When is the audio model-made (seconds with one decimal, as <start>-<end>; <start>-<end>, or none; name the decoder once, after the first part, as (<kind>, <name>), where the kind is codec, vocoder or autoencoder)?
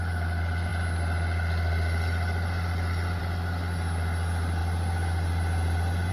none